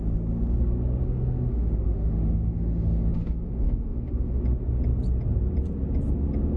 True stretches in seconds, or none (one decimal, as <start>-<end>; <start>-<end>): 0.0-1.0; 4.4-6.6